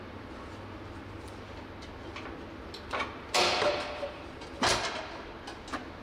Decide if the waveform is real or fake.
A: real